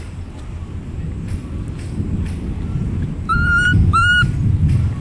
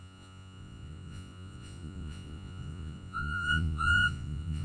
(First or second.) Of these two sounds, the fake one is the second